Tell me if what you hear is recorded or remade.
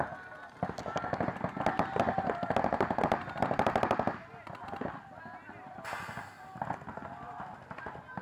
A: recorded